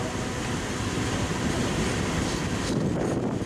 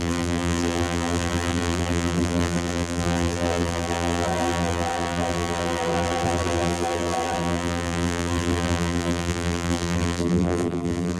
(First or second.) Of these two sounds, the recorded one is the first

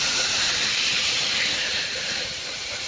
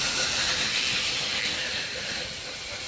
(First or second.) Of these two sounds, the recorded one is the second